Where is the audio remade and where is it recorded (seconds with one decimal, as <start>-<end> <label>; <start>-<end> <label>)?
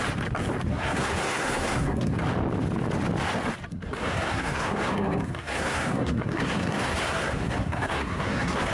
0.0-0.7 recorded; 0.7-2.1 remade; 2.1-3.7 recorded; 3.7-8.7 remade